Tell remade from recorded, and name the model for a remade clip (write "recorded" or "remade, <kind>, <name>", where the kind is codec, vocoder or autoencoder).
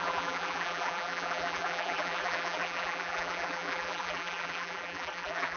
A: remade, vocoder, BigVGAN v2